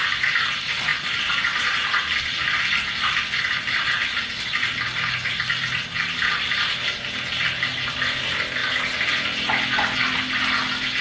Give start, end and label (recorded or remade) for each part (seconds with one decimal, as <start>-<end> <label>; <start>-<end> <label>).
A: 0.0-11.0 recorded